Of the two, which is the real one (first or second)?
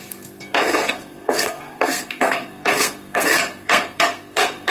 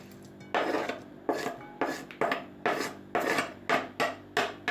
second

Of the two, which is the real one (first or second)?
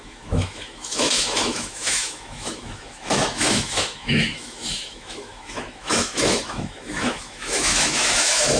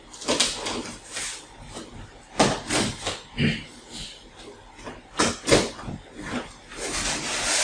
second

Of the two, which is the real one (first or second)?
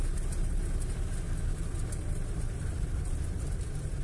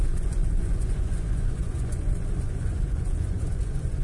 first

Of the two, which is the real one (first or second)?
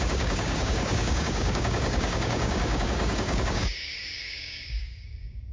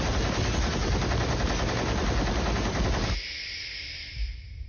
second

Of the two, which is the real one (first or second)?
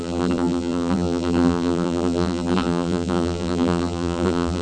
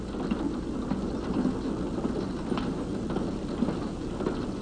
second